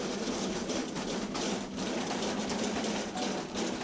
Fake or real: real